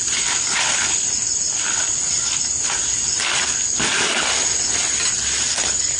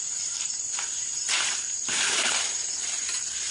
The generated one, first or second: second